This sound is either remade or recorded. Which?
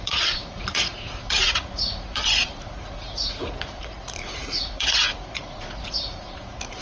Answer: remade